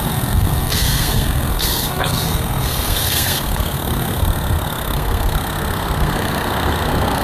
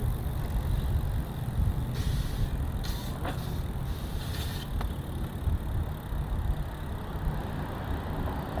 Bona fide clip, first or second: second